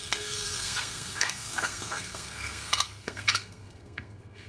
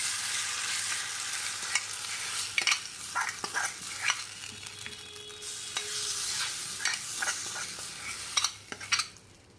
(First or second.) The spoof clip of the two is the first